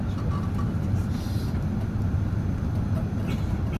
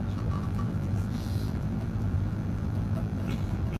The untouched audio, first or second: first